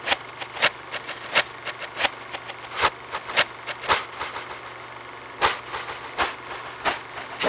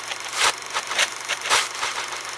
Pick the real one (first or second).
first